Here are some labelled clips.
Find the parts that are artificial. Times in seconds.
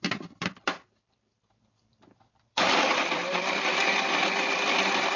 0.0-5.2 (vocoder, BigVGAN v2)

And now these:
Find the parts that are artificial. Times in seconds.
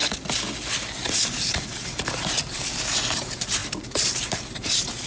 1.1-5.1 (vocoder, BigVGAN v2)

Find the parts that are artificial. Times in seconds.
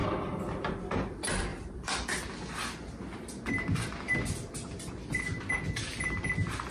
0.0-0.7 (vocoder, BigVGAN v2); 1.5-2.3